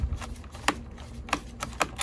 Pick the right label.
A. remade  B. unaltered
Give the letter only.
B